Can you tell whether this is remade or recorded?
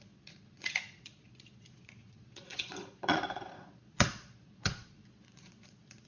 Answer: remade